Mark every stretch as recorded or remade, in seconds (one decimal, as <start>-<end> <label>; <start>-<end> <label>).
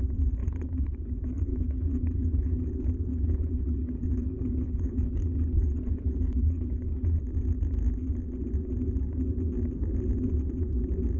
0.0-0.4 recorded; 0.4-1.1 remade; 1.1-1.5 recorded; 1.5-2.7 remade; 2.7-3.1 recorded; 3.1-7.2 remade; 7.2-11.2 recorded